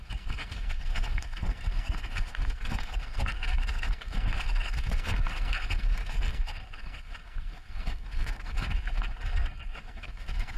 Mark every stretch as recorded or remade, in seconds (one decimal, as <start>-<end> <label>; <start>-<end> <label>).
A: 0.0-10.6 remade

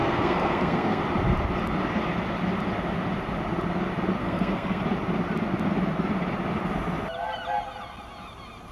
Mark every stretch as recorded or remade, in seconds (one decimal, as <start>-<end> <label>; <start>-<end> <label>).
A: 0.0-1.0 remade; 1.0-4.2 recorded; 4.2-4.8 remade; 4.8-8.7 recorded

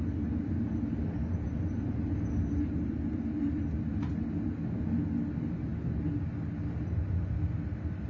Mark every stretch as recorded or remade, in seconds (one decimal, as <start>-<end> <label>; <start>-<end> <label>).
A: 0.0-8.1 recorded

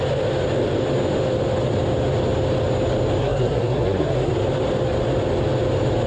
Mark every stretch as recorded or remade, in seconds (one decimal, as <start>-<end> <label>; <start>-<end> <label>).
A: 0.0-3.2 recorded; 3.2-4.3 remade; 4.3-6.1 recorded